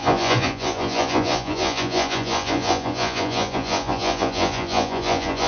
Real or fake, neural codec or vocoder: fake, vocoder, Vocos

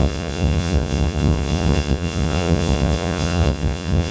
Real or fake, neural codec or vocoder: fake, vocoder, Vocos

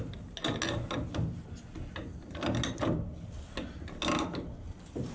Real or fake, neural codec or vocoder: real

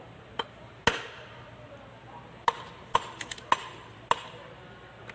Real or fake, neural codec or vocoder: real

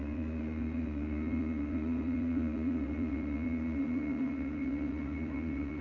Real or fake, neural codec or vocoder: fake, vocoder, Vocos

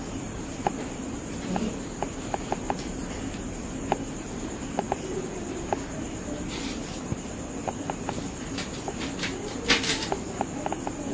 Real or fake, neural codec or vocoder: real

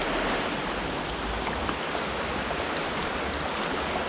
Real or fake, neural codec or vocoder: real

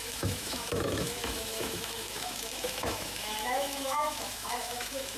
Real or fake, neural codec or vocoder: fake, autoencoder, DAC-VAE